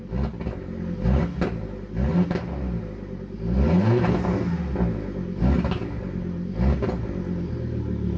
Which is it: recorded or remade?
recorded